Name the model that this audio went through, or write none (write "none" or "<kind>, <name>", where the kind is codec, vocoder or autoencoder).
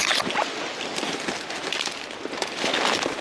none